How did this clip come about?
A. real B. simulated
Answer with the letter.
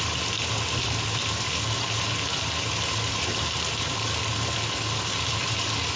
A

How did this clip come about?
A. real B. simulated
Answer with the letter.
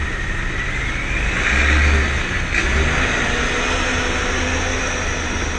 A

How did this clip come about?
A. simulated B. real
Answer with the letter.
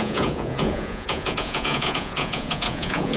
A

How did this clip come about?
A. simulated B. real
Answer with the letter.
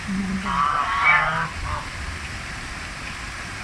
B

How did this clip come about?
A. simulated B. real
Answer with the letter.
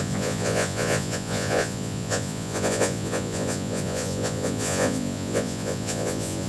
A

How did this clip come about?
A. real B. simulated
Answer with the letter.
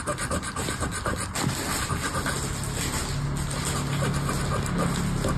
A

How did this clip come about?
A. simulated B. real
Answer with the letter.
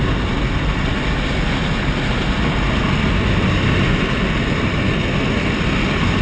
B